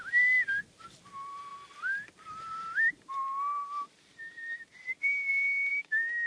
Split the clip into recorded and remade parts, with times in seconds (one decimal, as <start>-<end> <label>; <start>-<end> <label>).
0.0-5.7 recorded; 5.7-6.3 remade